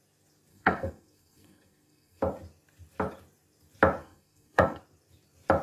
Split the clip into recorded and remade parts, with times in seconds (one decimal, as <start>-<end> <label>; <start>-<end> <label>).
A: 0.0-0.5 recorded; 0.5-2.2 remade; 2.2-4.0 recorded; 4.0-4.8 remade; 4.8-5.6 recorded